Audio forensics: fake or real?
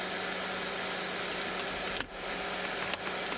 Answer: real